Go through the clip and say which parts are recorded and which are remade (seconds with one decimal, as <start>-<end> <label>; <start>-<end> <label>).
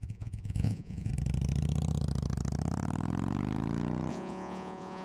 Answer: 0.0-1.1 remade; 1.1-4.1 recorded; 4.1-5.0 remade